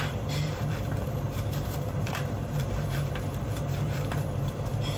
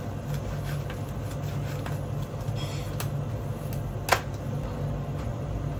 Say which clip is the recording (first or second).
second